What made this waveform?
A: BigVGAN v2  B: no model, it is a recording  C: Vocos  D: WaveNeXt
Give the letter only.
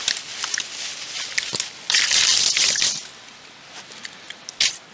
B